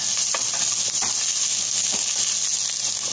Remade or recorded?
recorded